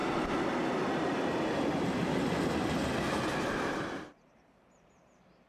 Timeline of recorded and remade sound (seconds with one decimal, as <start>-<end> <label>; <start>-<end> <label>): 0.0-3.3 recorded; 3.3-5.5 remade